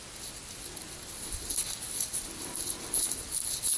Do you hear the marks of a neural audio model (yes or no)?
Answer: no